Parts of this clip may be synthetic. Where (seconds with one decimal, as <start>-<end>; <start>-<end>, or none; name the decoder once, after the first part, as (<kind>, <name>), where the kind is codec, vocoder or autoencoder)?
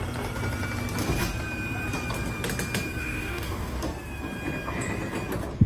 3.0-3.8 (codec, DAC)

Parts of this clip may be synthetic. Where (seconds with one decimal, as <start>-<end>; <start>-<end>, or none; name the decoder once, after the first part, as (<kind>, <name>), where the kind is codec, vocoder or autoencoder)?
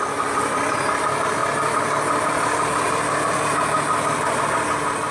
none